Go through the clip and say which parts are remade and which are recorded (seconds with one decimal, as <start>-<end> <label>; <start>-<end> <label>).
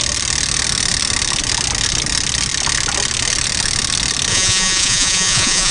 0.0-4.3 recorded; 4.3-5.7 remade